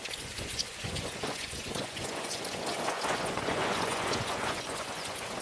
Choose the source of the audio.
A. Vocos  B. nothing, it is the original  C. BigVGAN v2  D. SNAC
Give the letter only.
A